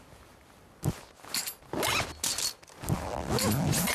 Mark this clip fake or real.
real